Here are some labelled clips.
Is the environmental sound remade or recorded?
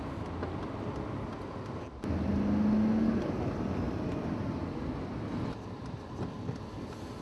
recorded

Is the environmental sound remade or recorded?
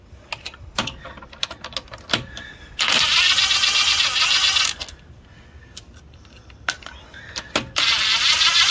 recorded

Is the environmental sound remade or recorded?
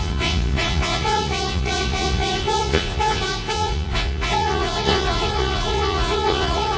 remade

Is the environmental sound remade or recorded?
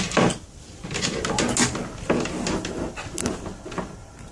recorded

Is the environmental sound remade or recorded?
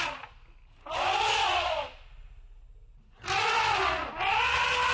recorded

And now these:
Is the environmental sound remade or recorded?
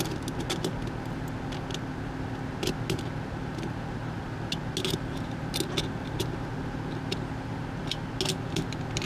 recorded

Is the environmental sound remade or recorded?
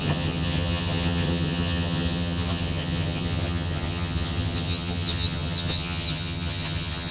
remade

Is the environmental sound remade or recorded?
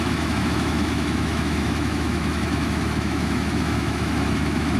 remade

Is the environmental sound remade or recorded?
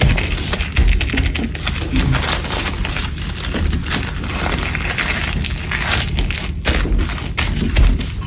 recorded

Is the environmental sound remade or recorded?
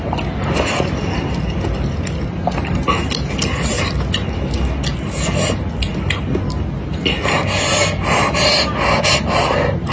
recorded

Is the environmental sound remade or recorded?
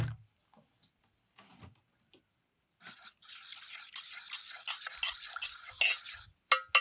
recorded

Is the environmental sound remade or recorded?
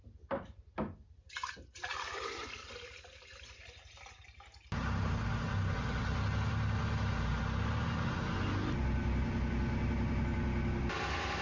recorded